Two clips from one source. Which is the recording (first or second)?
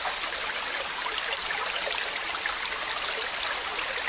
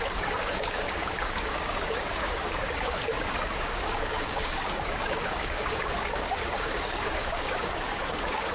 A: first